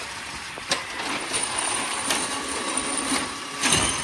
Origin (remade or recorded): remade